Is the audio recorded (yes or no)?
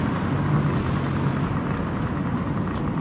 yes